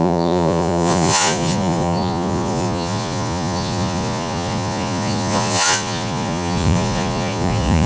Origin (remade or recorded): remade